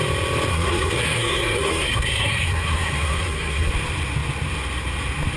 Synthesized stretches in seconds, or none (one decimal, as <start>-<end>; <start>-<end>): 0.5-3.7